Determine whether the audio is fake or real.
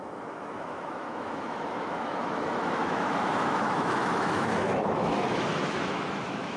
fake